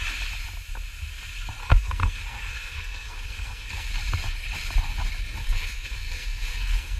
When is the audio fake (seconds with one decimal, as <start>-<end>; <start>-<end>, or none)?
1.6-3.9; 5.4-7.0